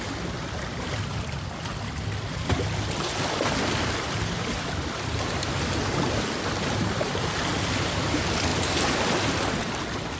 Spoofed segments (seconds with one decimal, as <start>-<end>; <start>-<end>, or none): none